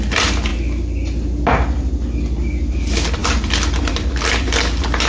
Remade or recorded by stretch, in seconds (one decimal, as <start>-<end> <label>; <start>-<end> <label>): 0.0-0.5 remade; 0.5-2.7 recorded; 2.7-5.1 remade